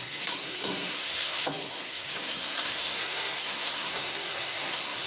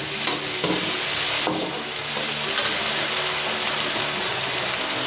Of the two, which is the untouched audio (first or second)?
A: second